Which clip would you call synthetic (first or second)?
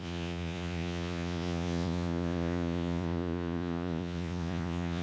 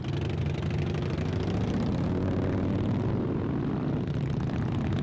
first